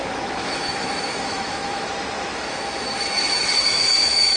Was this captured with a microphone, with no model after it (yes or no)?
no